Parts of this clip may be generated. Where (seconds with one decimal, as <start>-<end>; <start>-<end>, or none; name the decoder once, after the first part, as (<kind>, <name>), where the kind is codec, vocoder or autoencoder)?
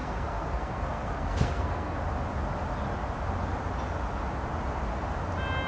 0.0-2.0 (codec, SNAC)